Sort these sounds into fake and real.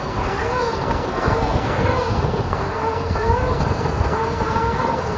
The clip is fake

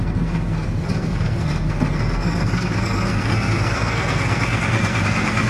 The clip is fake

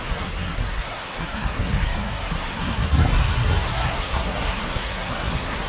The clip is fake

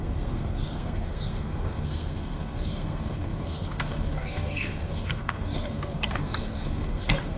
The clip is fake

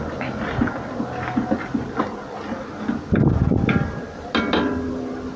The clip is real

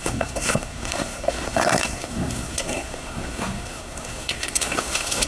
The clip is fake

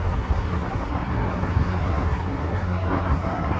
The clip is fake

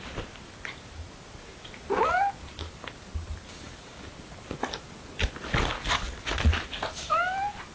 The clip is real